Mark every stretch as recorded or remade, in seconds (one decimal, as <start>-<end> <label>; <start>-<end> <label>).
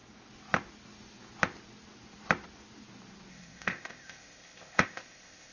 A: 0.0-3.3 recorded; 3.3-5.5 remade